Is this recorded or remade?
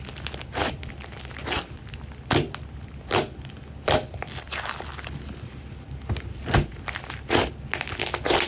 recorded